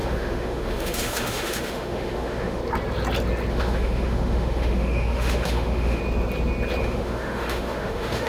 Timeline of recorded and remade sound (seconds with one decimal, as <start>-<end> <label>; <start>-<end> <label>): 0.0-2.6 remade; 2.6-3.5 recorded; 3.5-6.0 remade; 6.0-6.8 recorded; 6.8-8.3 remade